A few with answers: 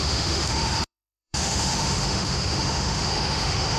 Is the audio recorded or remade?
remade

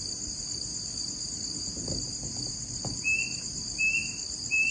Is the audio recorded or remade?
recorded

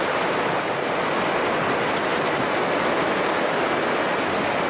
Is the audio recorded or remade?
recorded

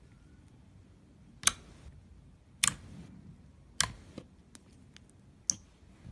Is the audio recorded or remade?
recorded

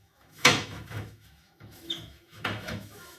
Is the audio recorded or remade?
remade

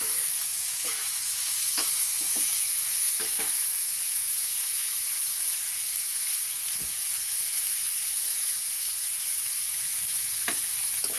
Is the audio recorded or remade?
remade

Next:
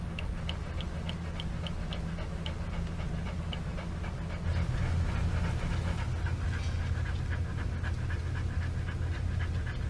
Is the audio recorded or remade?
recorded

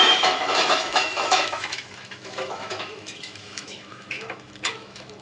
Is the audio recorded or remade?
remade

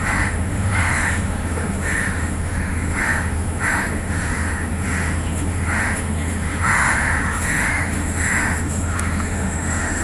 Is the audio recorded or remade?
remade